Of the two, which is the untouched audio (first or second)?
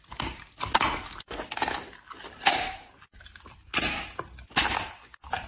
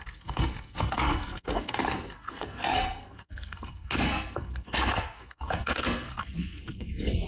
first